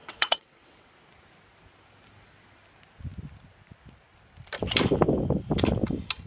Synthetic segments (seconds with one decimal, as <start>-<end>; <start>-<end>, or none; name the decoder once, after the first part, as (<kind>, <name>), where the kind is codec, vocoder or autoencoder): 0.0-0.9 (vocoder, WaveNeXt)